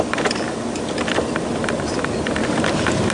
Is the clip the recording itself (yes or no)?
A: yes